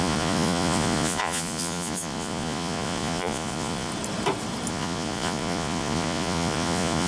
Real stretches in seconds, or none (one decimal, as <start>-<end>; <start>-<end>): 3.9-4.7

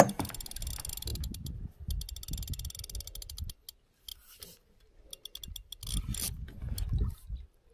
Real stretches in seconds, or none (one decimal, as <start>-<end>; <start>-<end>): 0.0-7.7

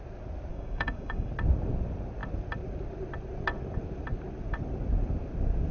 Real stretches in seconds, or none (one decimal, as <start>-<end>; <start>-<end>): 0.0-0.5; 1.3-5.7

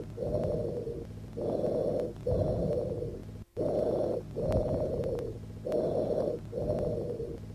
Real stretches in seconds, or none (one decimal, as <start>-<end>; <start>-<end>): 0.0-7.5